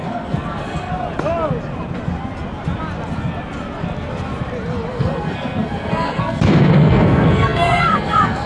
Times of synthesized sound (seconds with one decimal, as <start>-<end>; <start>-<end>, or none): 0.0-0.9; 4.9-8.5